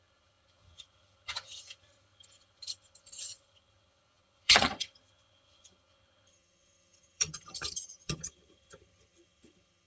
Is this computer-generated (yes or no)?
yes